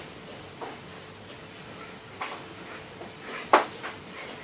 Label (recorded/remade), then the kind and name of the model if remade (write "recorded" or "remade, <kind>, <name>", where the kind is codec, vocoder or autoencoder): recorded